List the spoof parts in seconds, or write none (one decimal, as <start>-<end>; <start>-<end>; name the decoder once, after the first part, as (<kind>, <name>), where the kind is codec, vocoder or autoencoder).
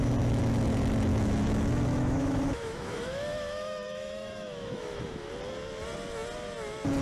1.1-5.3 (autoencoder, DAC-VAE)